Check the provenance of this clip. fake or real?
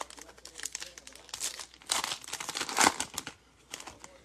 real